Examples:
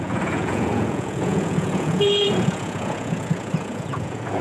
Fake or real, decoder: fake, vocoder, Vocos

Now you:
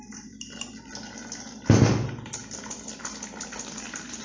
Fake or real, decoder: real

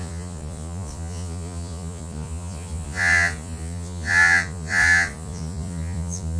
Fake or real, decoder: fake, vocoder, Vocos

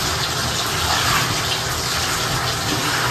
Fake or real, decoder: real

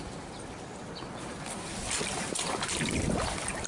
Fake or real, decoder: fake, vocoder, BigVGAN v2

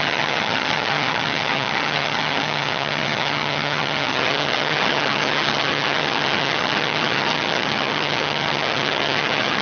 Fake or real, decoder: fake, vocoder, HiFi-GAN